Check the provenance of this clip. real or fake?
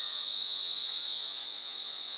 fake